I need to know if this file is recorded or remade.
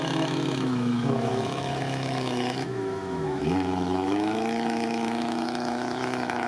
remade